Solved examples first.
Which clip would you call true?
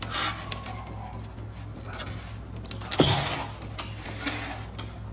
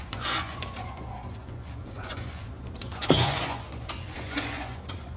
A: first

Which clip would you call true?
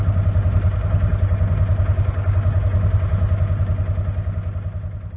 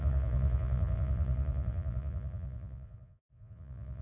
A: first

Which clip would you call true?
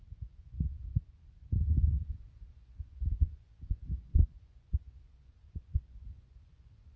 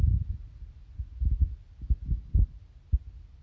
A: second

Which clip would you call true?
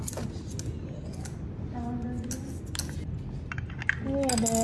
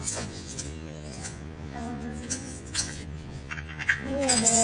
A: first